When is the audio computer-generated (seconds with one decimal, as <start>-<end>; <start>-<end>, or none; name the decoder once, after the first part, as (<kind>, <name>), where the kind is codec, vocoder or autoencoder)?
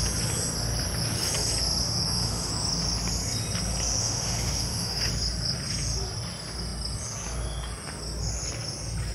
1.8-2.5 (autoencoder, DAC-VAE); 4.0-5.1